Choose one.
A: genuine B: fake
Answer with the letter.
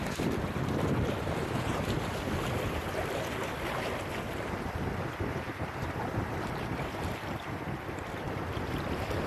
B